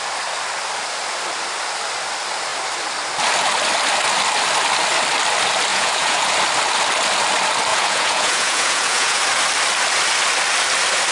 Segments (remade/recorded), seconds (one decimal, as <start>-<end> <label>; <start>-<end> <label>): 0.0-5.7 recorded; 5.7-6.3 remade; 6.3-7.7 recorded; 7.7-9.2 remade; 9.2-11.1 recorded